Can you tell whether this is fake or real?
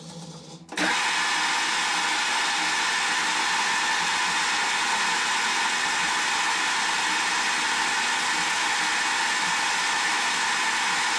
real